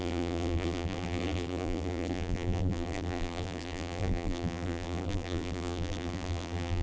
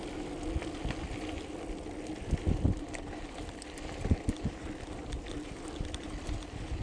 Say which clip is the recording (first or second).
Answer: second